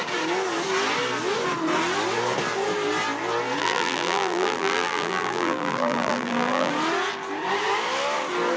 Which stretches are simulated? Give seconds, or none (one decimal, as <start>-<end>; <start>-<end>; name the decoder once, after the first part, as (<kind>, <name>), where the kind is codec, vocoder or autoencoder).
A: 3.6-6.7 (vocoder, BigVGAN v2)